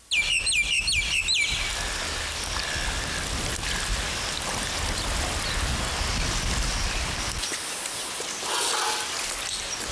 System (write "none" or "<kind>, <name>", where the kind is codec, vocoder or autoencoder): none